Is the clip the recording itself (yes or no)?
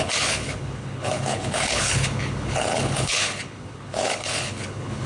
no